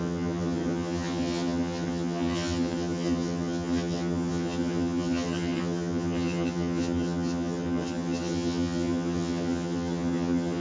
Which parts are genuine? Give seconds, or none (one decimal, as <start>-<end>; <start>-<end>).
none